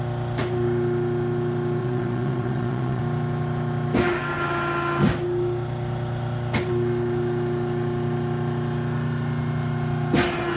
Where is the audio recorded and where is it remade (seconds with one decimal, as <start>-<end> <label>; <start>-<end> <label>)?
0.0-1.8 recorded; 1.8-3.0 remade; 3.0-10.6 recorded